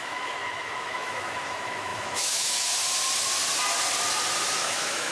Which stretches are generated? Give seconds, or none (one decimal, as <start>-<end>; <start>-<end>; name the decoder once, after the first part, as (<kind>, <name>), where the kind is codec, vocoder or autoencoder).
0.0-2.8 (autoencoder, DAC-VAE); 4.6-5.1

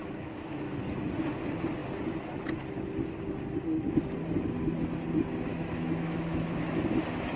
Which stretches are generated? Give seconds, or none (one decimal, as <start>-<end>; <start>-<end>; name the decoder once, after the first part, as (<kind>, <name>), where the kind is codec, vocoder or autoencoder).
0.0-0.8 (autoencoder, DAC-VAE); 5.5-6.8

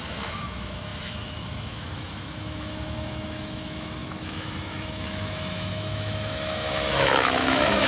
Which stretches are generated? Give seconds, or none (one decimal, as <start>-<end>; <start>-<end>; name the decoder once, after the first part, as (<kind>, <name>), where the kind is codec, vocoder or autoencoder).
0.0-7.9 (autoencoder, DAC-VAE)

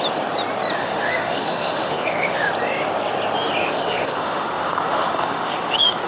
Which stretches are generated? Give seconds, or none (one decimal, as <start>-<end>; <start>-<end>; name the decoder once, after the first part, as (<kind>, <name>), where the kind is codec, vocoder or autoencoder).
0.8-2.5 (autoencoder, DAC-VAE); 3.6-6.1

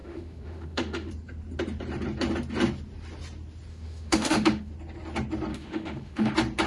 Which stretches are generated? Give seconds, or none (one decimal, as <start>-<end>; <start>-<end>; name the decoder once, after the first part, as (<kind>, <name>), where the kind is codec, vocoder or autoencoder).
0.0-1.1 (autoencoder, DAC-VAE); 3.7-4.7; 5.5-6.3

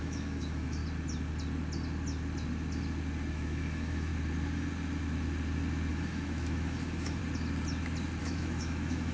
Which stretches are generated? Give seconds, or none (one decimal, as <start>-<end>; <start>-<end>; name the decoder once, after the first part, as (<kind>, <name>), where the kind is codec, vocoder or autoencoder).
0.0-0.8 (autoencoder, DAC-VAE); 3.3-4.1; 5.9-7.2; 8.2-9.1

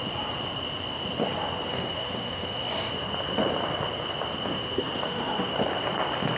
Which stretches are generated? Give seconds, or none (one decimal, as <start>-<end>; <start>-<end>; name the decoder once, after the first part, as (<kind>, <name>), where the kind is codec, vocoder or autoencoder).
1.7-2.7 (autoencoder, DAC-VAE); 4.4-5.6